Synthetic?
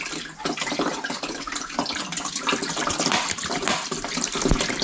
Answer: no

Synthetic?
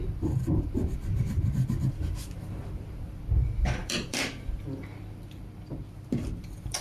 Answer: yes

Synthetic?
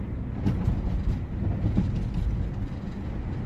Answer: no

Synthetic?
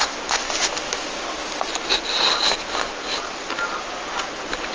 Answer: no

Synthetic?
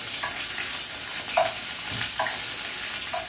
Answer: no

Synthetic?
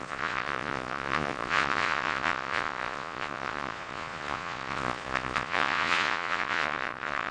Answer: yes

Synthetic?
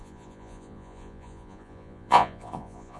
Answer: yes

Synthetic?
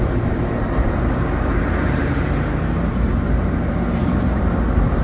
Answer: yes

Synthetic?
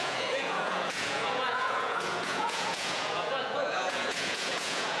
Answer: yes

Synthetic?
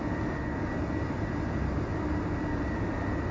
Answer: no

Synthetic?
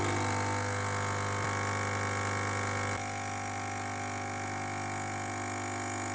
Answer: no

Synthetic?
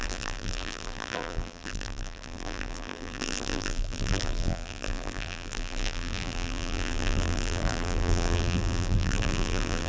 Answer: yes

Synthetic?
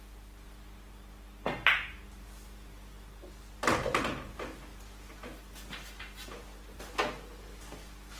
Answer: no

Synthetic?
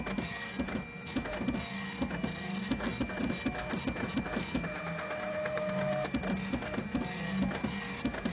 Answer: no